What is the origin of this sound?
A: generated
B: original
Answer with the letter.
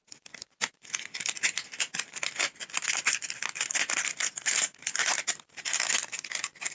B